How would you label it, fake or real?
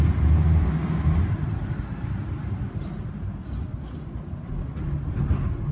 real